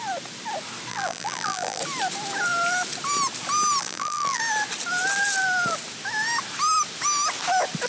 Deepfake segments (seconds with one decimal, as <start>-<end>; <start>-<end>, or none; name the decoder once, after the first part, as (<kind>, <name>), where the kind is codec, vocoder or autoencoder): 0.9-1.8 (vocoder, BigVGAN v2); 3.8-4.4

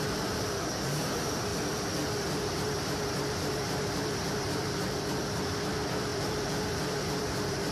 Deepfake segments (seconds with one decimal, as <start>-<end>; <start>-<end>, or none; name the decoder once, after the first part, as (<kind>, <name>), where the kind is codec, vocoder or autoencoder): 0.0-1.5 (vocoder, BigVGAN v2); 2.4-7.7

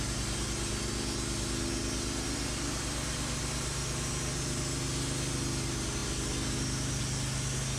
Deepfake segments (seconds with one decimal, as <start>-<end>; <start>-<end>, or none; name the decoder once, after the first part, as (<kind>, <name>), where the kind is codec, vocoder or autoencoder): none